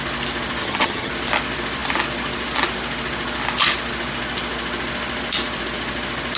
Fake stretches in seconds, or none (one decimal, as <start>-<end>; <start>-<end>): 0.6-1.1